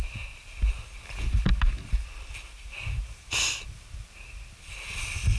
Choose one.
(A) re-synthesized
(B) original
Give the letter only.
B